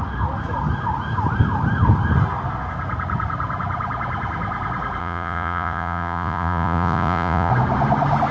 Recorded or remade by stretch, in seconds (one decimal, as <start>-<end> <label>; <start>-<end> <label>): 0.0-5.0 recorded; 5.0-7.5 remade; 7.5-8.3 recorded